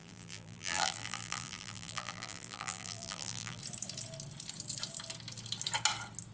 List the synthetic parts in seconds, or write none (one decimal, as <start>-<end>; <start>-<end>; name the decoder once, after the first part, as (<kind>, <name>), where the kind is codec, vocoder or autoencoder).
0.0-3.6 (vocoder, BigVGAN v2)